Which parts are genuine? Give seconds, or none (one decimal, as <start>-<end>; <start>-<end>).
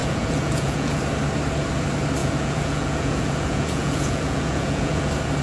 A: 1.0-2.2; 5.0-5.4